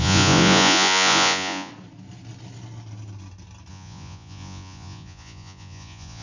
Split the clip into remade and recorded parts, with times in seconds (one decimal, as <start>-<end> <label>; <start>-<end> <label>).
0.0-1.7 remade; 1.7-3.7 recorded; 3.7-6.2 remade